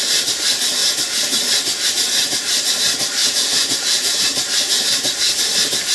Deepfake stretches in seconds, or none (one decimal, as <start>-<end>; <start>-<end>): 3.2-4.2